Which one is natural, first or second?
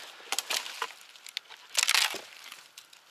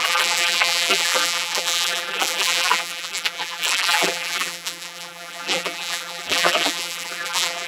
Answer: first